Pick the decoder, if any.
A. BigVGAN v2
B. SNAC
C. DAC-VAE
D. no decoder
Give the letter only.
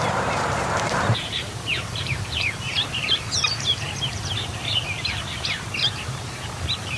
A